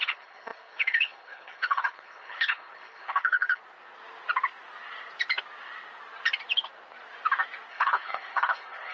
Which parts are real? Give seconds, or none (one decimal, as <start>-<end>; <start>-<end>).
3.6-7.7